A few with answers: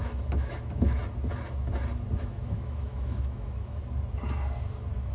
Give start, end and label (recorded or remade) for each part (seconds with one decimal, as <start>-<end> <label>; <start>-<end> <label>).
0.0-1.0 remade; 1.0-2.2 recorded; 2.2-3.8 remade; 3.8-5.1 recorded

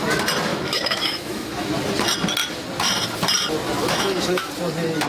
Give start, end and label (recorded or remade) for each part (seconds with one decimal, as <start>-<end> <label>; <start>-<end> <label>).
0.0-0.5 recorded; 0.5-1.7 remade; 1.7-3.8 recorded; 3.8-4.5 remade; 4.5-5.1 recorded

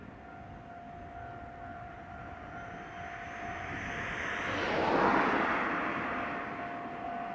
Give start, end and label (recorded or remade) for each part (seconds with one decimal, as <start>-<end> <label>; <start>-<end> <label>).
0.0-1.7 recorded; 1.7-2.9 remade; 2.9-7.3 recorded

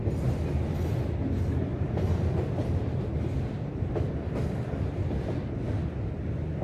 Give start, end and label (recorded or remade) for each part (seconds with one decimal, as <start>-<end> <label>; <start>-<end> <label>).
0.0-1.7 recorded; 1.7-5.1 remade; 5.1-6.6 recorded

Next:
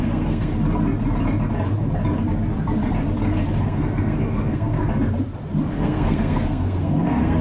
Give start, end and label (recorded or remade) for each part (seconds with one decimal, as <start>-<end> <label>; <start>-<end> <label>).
0.0-0.5 remade; 0.5-3.6 recorded; 3.6-4.8 remade; 4.8-5.7 recorded; 5.7-7.4 remade